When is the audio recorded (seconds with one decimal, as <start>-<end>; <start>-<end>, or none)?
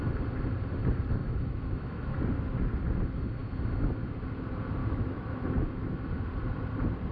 0.0-1.2; 2.2-4.8; 6.0-7.1